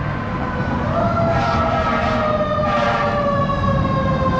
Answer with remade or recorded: recorded